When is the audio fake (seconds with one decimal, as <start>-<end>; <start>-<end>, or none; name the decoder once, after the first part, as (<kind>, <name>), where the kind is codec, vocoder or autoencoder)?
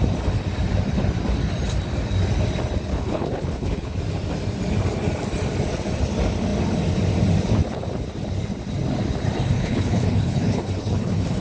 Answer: 2.9-4.0 (codec, HILCodec); 9.5-11.4